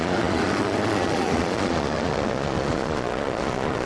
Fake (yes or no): yes